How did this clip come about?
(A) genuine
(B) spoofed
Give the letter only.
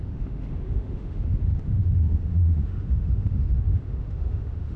B